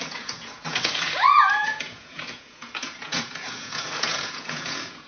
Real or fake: fake